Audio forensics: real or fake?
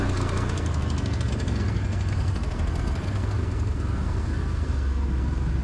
fake